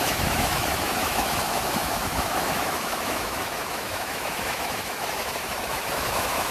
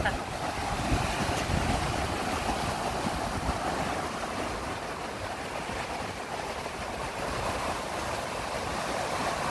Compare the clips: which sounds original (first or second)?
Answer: second